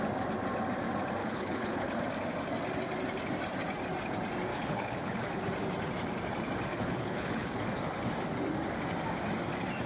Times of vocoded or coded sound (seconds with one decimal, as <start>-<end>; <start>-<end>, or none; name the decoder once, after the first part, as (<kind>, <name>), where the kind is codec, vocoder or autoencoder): 1.2-2.0 (codec, HILCodec); 4.5-5.4; 6.7-7.6